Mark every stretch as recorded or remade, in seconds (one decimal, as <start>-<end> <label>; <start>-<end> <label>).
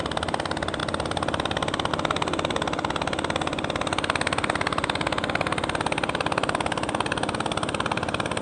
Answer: 0.0-8.4 recorded